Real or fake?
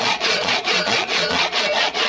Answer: fake